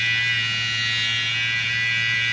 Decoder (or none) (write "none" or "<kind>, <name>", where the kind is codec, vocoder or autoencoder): none